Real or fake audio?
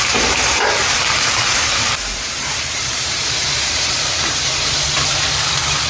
fake